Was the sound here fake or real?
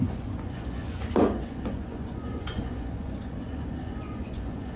fake